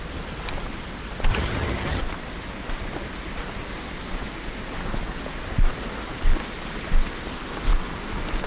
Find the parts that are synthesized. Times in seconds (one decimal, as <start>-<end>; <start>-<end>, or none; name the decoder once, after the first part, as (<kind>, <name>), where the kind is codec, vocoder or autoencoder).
1.3-2.0 (vocoder, HiFi-GAN)